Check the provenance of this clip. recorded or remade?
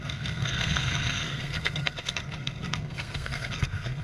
remade